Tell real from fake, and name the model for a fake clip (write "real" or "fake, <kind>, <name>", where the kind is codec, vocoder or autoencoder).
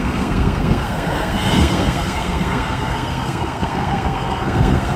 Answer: fake, codec, SNAC